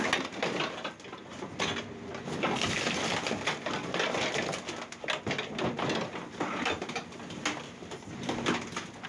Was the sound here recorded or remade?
recorded